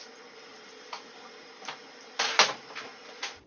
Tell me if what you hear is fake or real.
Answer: real